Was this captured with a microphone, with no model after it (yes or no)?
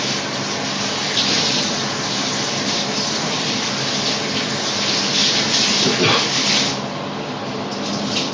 yes